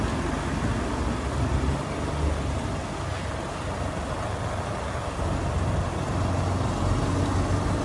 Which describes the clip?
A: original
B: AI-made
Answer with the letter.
A